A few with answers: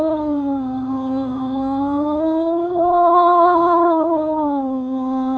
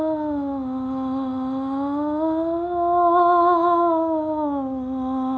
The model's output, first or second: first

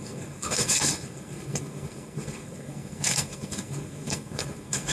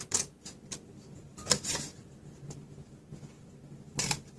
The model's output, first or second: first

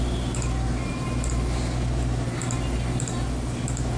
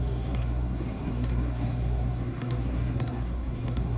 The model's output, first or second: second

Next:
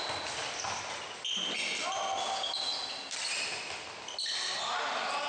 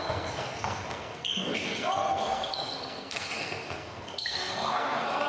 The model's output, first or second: second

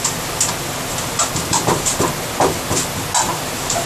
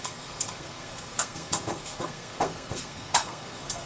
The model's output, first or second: second